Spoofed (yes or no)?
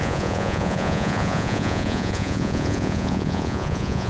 yes